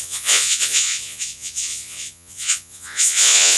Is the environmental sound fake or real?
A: fake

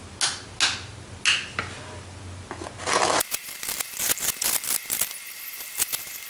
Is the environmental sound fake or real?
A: real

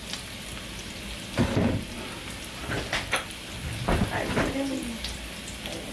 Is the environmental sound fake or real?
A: real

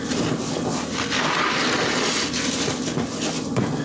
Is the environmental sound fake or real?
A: real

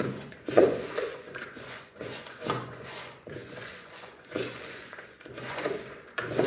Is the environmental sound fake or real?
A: fake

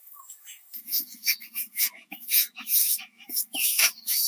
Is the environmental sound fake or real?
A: fake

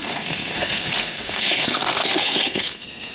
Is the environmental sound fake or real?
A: fake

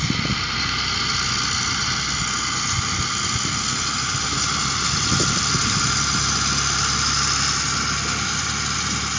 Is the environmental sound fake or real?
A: real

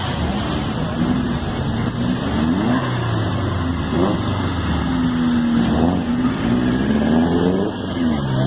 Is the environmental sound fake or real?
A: real